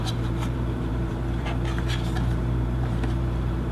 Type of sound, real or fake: fake